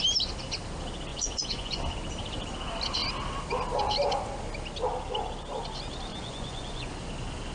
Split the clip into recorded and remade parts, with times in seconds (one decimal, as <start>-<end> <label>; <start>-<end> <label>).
0.0-1.1 recorded; 1.1-1.8 remade; 1.8-6.1 recorded; 6.1-6.9 remade; 6.9-7.5 recorded